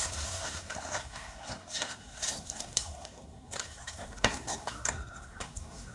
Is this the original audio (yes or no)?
no